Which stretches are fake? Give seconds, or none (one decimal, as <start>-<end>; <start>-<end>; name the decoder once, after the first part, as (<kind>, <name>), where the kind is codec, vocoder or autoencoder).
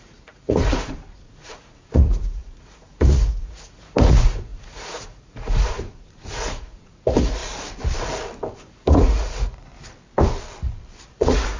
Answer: 0.0-7.4 (vocoder, Vocos); 8.6-9.7; 11.1-11.6